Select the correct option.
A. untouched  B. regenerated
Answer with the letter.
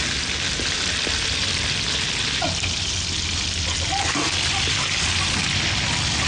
A